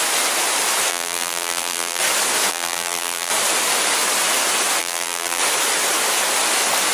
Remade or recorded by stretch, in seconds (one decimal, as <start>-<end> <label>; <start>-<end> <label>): 0.0-0.9 recorded; 0.9-2.0 remade; 2.0-2.5 recorded; 2.5-3.3 remade; 3.3-4.8 recorded; 4.8-5.4 remade; 5.4-6.9 recorded